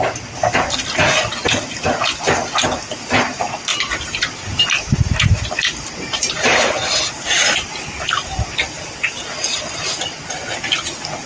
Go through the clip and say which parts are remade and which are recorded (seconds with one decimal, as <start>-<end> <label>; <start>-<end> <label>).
0.0-3.7 recorded; 3.7-8.1 remade; 8.1-11.3 recorded